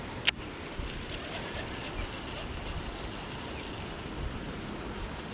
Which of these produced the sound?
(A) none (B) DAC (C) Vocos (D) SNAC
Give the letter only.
A